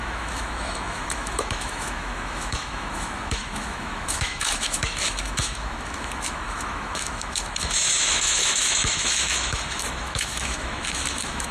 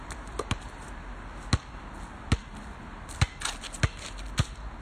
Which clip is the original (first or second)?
second